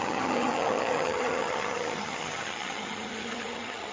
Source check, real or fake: fake